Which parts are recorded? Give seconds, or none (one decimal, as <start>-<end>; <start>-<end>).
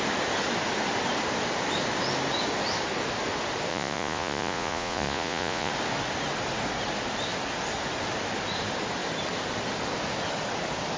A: 0.0-3.7; 5.7-11.0